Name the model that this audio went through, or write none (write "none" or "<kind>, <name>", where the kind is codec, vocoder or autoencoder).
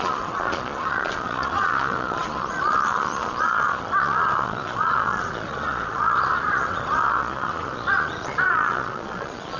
vocoder, Vocos